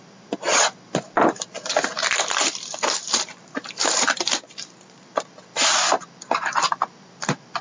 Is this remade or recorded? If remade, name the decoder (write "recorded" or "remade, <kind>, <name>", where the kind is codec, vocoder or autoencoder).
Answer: remade, vocoder, BigVGAN v2